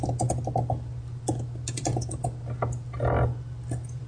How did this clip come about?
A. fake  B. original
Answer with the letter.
B